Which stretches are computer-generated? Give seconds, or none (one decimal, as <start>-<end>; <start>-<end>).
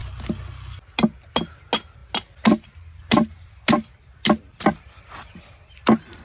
none